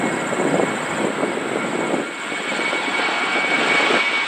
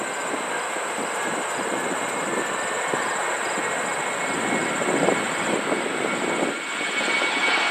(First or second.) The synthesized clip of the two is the first